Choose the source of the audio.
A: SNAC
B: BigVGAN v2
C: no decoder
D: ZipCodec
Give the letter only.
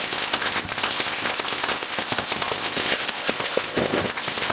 D